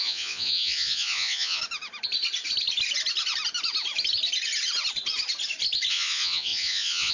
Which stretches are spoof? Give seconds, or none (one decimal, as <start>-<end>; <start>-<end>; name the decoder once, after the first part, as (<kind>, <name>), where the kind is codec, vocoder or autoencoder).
0.0-1.6 (vocoder, Vocos); 5.9-7.1